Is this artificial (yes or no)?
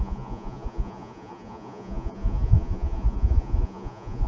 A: yes